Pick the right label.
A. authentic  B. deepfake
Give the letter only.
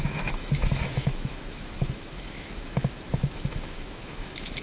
B